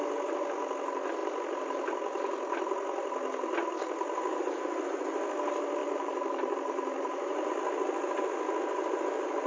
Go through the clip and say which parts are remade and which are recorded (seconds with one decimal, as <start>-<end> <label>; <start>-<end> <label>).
0.0-5.8 recorded; 5.8-7.5 remade; 7.5-9.5 recorded